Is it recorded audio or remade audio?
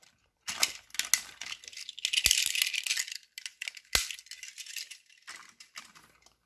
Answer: recorded